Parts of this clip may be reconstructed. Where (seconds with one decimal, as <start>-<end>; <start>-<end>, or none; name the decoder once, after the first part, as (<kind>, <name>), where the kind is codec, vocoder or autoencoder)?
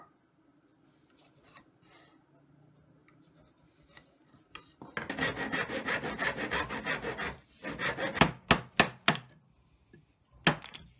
none